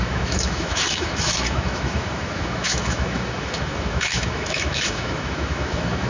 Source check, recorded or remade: remade